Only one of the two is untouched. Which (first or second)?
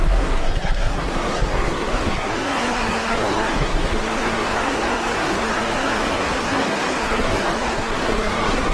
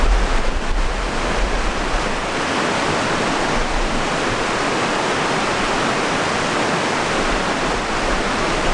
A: second